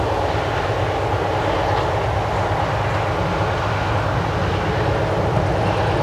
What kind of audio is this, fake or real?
real